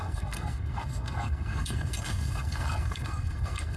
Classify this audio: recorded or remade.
remade